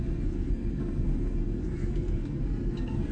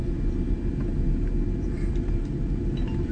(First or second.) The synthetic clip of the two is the first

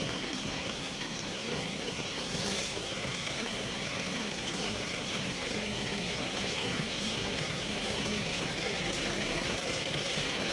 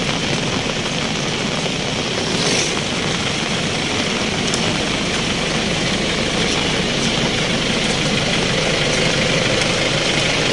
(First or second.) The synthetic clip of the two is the first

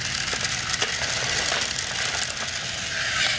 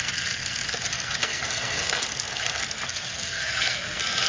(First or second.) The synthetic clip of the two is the second